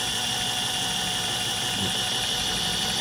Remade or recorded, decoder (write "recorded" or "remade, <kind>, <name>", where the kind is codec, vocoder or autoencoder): remade, vocoder, BigVGAN v2